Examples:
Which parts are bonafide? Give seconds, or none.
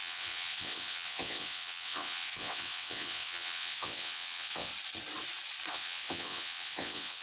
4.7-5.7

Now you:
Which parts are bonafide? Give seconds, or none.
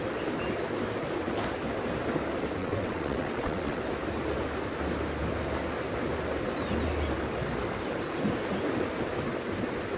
0.0-2.6; 3.8-10.0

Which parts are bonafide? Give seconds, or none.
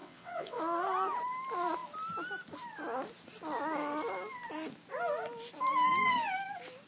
0.6-6.9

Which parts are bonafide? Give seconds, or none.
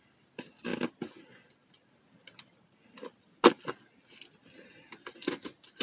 0.0-5.8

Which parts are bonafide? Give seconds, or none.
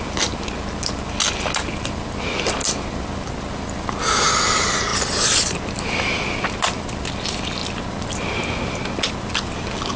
0.0-10.0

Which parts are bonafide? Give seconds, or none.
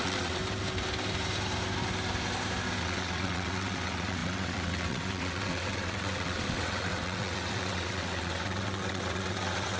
0.4-2.8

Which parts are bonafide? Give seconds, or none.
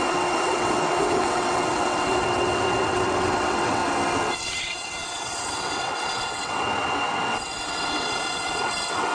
3.8-4.4